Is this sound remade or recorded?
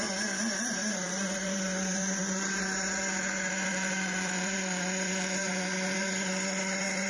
remade